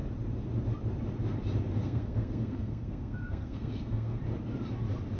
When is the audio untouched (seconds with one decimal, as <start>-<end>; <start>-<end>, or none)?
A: 0.0-1.8; 4.2-5.2